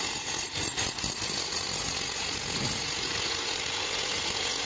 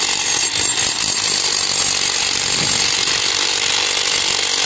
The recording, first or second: second